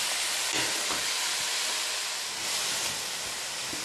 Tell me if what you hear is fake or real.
real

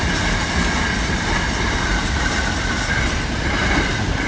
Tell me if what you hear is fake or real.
real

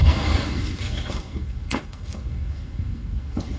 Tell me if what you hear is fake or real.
fake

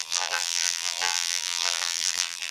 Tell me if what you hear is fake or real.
fake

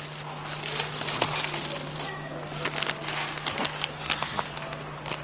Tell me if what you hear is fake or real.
real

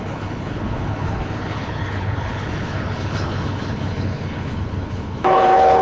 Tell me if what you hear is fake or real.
fake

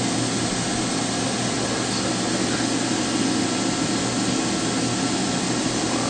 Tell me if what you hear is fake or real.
real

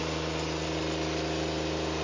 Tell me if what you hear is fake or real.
real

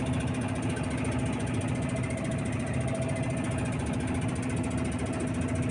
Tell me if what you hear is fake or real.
real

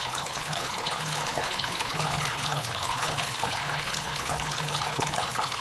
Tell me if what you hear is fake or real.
fake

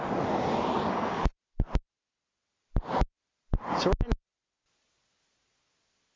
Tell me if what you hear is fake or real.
real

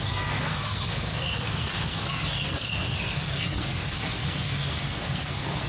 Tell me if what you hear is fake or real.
fake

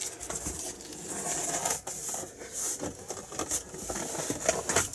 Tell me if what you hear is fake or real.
real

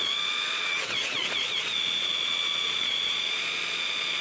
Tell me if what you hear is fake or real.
fake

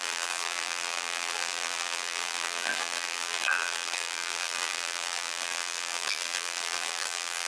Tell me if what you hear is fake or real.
fake